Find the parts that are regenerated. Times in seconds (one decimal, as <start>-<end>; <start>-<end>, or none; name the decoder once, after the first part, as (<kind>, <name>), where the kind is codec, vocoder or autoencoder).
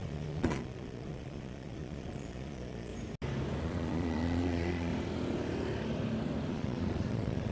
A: 0.0-2.9 (vocoder, Vocos); 3.6-4.9; 6.5-7.5